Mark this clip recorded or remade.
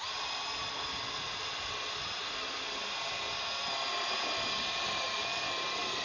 recorded